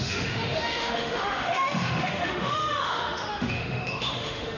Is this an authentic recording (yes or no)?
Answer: no